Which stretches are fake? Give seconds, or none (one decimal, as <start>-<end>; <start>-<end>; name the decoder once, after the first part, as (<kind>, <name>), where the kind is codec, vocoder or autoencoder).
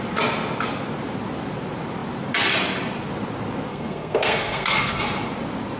3.7-5.0 (codec, SNAC)